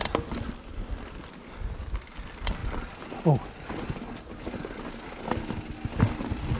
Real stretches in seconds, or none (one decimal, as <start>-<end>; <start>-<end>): 0.0-6.6